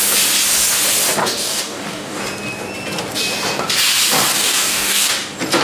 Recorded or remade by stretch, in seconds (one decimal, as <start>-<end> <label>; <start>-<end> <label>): 0.0-1.2 recorded; 1.2-2.2 remade; 2.2-4.3 recorded; 4.3-5.1 remade; 5.1-5.6 recorded

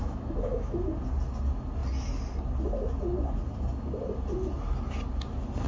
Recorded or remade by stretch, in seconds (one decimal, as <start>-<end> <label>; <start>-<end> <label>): 0.0-0.9 remade; 0.9-5.7 recorded

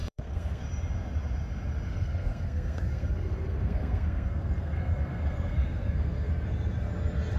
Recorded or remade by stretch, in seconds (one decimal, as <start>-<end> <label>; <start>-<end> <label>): 0.0-0.6 remade; 0.6-1.9 recorded; 1.9-6.3 remade; 6.3-7.4 recorded

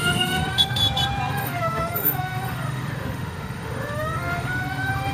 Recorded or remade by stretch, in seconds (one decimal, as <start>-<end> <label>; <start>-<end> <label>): 0.0-0.8 remade; 0.8-1.3 recorded; 1.3-5.1 remade

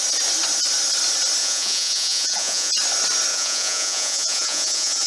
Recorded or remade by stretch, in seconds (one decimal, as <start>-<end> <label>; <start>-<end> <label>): 0.0-1.4 recorded; 1.4-2.7 remade; 2.7-3.3 recorded; 3.3-5.1 remade

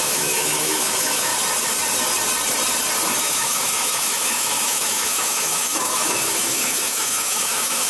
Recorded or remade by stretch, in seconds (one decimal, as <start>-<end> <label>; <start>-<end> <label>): 0.0-1.3 remade; 1.3-3.2 recorded; 3.2-7.9 remade